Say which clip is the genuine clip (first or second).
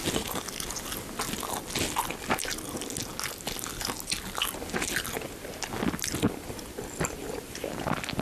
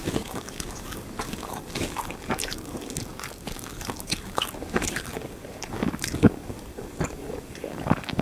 first